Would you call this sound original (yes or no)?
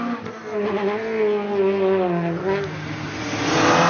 yes